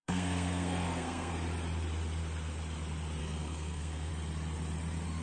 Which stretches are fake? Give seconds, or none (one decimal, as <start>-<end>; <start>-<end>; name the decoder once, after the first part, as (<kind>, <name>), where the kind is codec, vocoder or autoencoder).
0.0-1.3 (codec, SNAC); 3.2-4.1